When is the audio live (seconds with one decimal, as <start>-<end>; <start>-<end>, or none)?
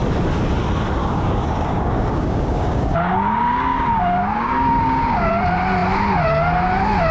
0.0-1.0; 5.3-7.1